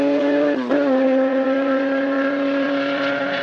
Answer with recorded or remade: remade